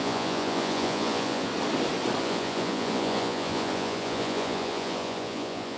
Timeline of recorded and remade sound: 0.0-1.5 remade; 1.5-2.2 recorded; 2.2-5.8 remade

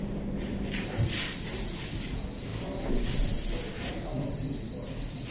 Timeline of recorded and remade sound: 0.0-5.3 recorded

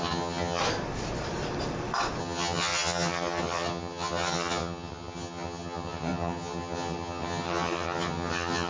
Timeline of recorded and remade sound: 0.0-0.6 remade; 0.6-2.2 recorded; 2.2-8.7 remade

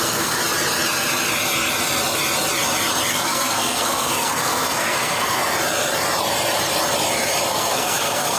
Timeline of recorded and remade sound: 0.0-0.4 remade; 0.4-3.1 recorded; 3.1-5.4 remade; 5.4-7.5 recorded; 7.5-8.4 remade

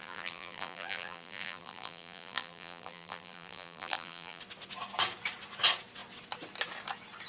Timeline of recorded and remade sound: 0.0-4.4 remade; 4.4-7.3 recorded